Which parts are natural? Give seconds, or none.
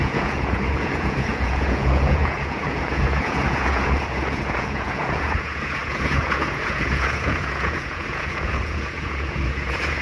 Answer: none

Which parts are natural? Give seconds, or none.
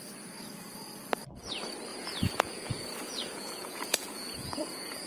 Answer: 0.0-1.9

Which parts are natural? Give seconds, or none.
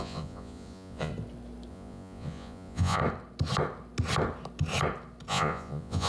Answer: 1.1-1.7; 3.0-5.3